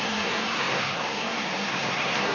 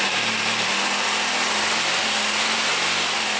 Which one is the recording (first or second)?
second